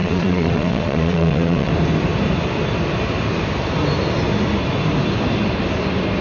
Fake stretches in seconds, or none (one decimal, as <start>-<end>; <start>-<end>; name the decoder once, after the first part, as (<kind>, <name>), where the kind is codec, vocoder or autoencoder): 0.0-1.7 (vocoder, Vocos)